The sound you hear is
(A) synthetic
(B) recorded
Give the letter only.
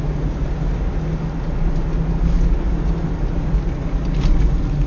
B